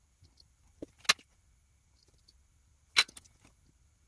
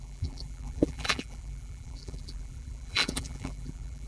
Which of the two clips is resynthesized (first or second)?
second